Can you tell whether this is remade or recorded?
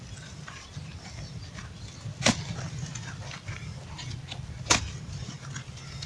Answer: recorded